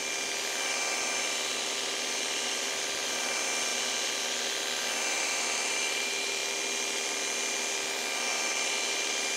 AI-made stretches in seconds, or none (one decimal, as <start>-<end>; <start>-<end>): 0.0-3.7; 4.9-6.4; 8.3-9.4